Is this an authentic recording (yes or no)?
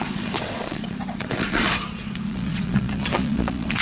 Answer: no